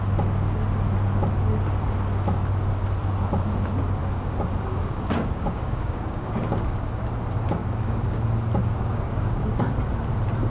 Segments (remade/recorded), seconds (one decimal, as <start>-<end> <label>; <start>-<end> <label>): 0.0-4.0 recorded; 4.0-7.0 remade; 7.0-7.6 recorded; 7.6-8.2 remade; 8.2-8.6 recorded; 8.6-9.7 remade; 9.7-10.5 recorded